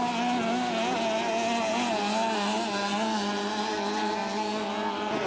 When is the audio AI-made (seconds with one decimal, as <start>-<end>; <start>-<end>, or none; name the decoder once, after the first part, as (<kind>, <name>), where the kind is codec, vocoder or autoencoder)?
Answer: none